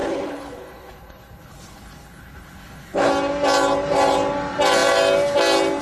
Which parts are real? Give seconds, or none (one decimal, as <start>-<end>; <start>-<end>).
3.1-5.8